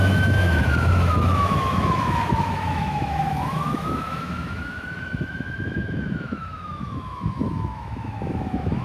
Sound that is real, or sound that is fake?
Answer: fake